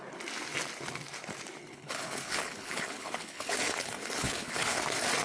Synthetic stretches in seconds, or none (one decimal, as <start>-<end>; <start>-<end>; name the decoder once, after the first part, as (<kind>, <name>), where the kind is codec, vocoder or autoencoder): 1.7-4.8 (codec, HILCodec)